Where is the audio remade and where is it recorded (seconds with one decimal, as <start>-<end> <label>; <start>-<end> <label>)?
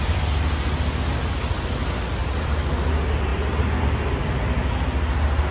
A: 0.0-2.2 recorded; 2.2-2.9 remade; 2.9-5.5 recorded